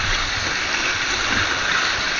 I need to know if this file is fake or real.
real